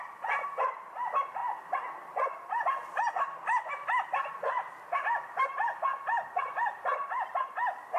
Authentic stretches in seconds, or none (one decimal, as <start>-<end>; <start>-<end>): 1.4-1.9; 5.9-6.4

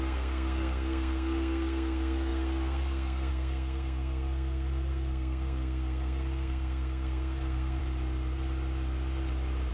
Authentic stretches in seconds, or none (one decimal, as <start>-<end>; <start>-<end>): 7.8-9.7

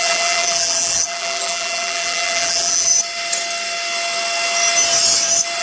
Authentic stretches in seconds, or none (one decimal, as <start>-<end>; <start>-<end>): 2.9-5.6

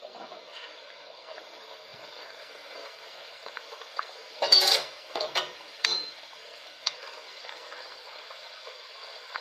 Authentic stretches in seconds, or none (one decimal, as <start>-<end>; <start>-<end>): none

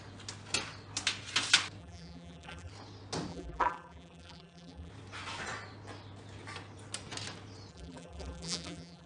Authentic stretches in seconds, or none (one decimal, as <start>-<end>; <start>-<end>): 0.0-1.8; 2.7-3.3; 4.9-7.7

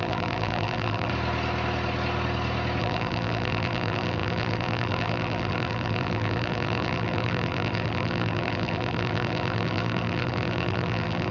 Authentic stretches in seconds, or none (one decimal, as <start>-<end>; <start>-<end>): 1.1-2.8

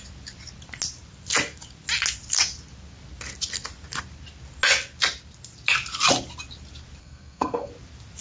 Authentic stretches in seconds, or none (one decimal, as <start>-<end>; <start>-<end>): 0.0-7.0; 7.7-8.2